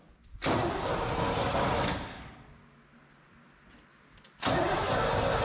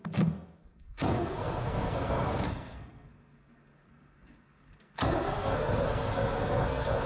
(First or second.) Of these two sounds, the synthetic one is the second